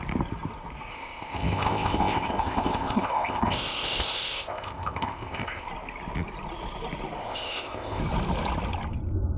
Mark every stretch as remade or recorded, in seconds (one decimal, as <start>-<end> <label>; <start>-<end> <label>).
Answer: 0.0-0.9 recorded; 0.9-5.7 remade; 5.7-7.2 recorded; 7.2-8.0 remade; 8.0-9.4 recorded